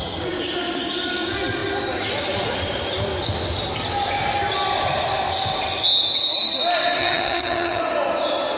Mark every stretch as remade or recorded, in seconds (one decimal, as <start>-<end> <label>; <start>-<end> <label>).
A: 0.0-7.0 recorded; 7.0-7.8 remade; 7.8-8.6 recorded